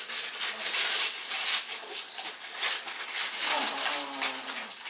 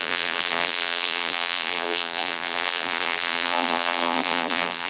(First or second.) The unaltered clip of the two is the first